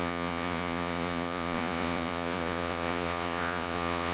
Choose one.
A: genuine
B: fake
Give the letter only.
B